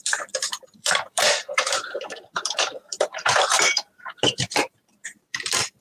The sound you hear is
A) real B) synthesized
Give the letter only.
B